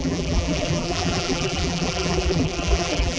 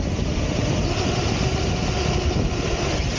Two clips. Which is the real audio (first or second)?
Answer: second